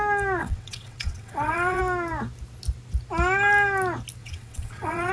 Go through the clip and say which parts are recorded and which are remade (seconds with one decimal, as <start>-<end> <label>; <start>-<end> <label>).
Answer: 0.0-0.4 recorded; 0.4-1.8 remade; 1.8-4.2 recorded; 4.2-5.1 remade